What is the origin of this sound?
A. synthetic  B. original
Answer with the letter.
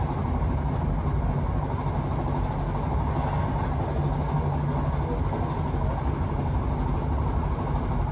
B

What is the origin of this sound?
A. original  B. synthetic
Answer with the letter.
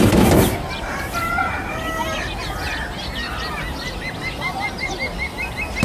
A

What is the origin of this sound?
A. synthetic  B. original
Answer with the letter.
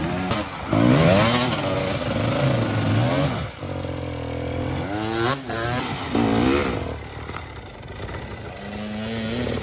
B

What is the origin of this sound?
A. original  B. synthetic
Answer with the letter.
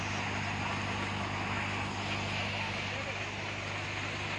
A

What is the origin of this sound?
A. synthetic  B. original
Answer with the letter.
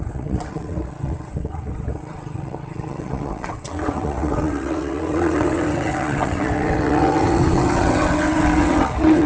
A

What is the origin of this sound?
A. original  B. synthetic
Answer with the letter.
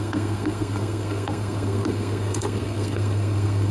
B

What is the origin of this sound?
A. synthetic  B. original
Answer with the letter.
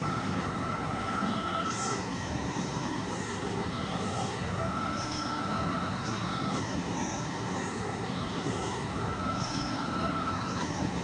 A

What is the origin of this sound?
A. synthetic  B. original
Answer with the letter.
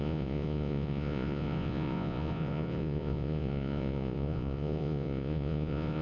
A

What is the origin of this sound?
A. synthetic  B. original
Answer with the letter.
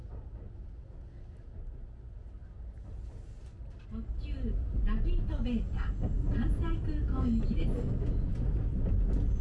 B